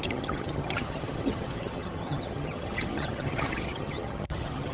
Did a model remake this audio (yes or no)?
yes